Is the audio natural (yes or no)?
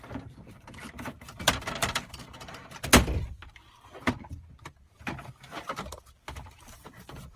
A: no